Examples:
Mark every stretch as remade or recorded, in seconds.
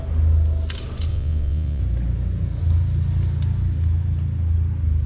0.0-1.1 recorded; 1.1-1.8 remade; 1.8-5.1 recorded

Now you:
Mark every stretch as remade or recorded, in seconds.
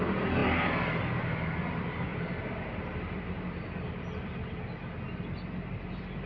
0.0-6.3 recorded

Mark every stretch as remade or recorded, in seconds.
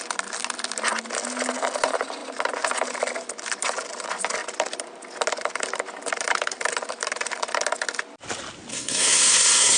0.0-8.7 recorded; 8.7-9.8 remade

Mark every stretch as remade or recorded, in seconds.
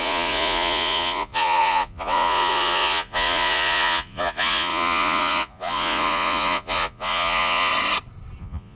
0.0-7.7 remade; 7.7-8.4 recorded; 8.4-8.8 remade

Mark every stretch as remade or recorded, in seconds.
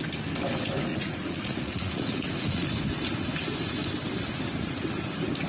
0.0-0.9 recorded; 0.9-2.7 remade; 2.7-5.5 recorded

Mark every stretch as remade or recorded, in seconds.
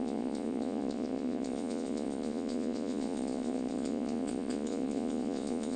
0.0-5.8 remade